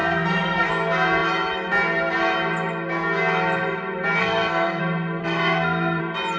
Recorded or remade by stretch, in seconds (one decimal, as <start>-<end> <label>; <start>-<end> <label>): 0.0-0.7 remade; 0.7-4.2 recorded; 4.2-4.8 remade; 4.8-5.2 recorded; 5.2-6.0 remade; 6.0-6.4 recorded